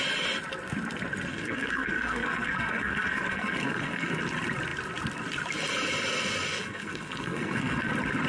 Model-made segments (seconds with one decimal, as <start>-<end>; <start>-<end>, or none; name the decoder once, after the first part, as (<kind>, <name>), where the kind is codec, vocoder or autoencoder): 1.3-4.2 (codec, SNAC); 6.5-7.9